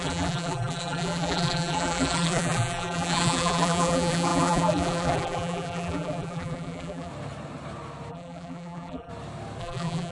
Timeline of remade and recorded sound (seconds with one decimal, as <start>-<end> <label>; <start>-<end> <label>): 0.0-7.1 remade; 7.1-8.1 recorded; 8.1-9.1 remade; 9.1-9.6 recorded; 9.6-10.1 remade